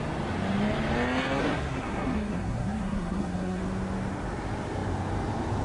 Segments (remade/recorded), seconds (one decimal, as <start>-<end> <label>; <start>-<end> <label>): 0.0-1.4 recorded; 1.4-3.6 remade; 3.6-5.6 recorded